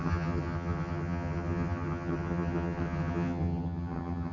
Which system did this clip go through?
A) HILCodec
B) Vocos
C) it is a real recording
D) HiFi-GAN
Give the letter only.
D